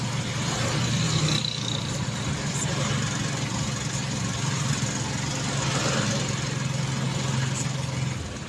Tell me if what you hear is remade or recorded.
recorded